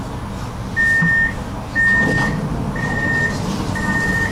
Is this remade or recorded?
recorded